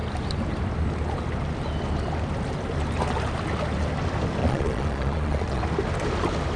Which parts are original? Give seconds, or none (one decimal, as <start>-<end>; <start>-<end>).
0.0-4.4; 5.6-6.6